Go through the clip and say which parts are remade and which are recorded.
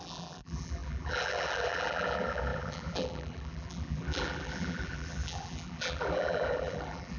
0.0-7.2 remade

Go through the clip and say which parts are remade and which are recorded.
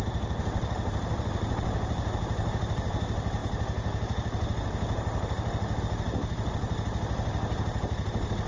0.0-8.5 recorded